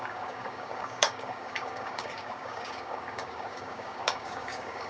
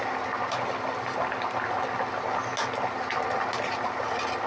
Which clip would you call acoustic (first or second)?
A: second